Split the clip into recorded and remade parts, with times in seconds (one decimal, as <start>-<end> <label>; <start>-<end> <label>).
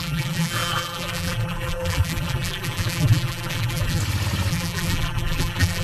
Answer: 0.0-4.0 remade; 4.0-4.5 recorded; 4.5-5.8 remade